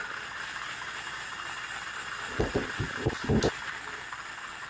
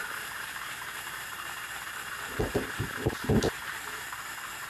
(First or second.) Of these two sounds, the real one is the first